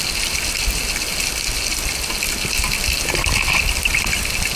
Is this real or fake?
real